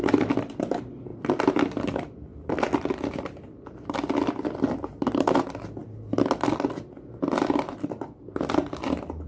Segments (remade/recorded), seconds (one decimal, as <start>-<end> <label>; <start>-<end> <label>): 0.0-2.3 remade; 2.3-3.7 recorded; 3.7-5.8 remade; 5.8-6.5 recorded; 6.5-9.3 remade

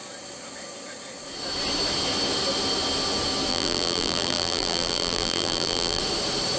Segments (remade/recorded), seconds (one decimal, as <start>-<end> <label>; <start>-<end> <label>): 0.0-3.5 recorded; 3.5-6.0 remade; 6.0-6.6 recorded

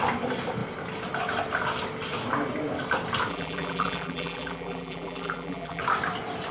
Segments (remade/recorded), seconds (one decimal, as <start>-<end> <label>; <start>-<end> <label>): 0.0-3.3 recorded; 3.3-5.8 remade; 5.8-6.5 recorded

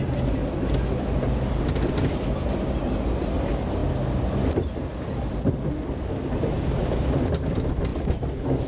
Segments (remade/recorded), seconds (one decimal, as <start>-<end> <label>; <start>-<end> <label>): 0.0-8.7 recorded

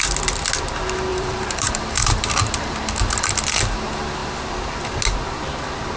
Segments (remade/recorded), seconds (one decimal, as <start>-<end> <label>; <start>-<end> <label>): 0.0-1.1 recorded; 1.1-2.8 remade; 2.8-6.0 recorded

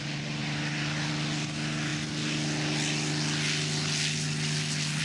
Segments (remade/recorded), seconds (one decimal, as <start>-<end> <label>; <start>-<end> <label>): 0.0-0.4 recorded; 0.4-1.1 remade; 1.1-5.0 recorded

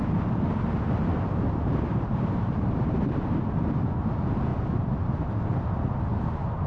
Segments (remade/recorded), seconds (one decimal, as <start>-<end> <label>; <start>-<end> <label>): 0.0-1.1 recorded; 1.1-3.4 remade; 3.4-6.7 recorded

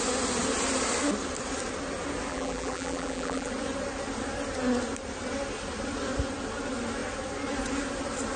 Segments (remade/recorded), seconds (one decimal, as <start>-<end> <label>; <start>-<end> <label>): 0.0-2.3 recorded; 2.3-3.5 remade; 3.5-8.4 recorded